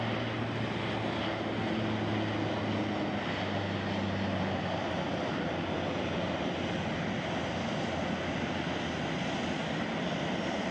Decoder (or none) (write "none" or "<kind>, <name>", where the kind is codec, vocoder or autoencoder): none